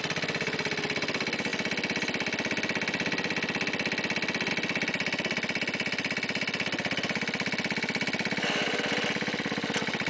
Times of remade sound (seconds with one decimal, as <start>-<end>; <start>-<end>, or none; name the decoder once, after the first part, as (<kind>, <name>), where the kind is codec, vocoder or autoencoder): none